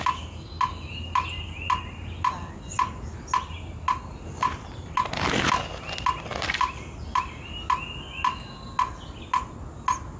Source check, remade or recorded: recorded